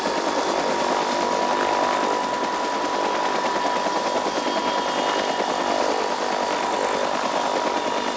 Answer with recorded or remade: recorded